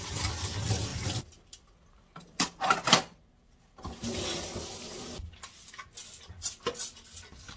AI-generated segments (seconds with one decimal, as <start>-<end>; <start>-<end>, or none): none